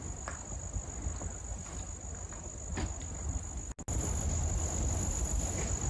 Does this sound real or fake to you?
real